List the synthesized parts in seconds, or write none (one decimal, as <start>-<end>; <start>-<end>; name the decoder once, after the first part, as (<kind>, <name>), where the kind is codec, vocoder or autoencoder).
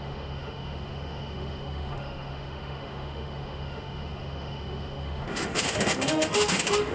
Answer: 0.0-6.9 (autoencoder, DAC-VAE)